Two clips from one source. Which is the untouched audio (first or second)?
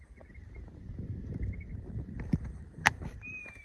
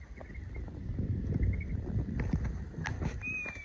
second